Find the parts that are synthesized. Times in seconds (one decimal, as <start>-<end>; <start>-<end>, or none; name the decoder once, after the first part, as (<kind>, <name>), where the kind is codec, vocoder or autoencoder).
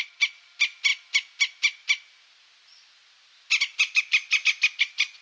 none